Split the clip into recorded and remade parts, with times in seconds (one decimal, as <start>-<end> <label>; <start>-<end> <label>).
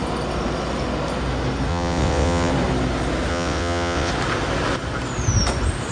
0.0-1.7 recorded; 1.7-2.5 remade; 2.5-3.3 recorded; 3.3-4.1 remade; 4.1-5.9 recorded